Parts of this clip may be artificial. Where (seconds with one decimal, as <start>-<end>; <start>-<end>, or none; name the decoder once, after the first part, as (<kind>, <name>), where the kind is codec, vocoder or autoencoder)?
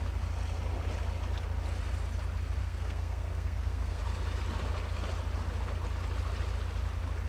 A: 2.6-4.0 (codec, SNAC)